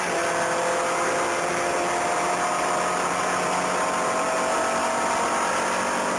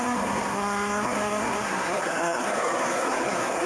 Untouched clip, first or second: first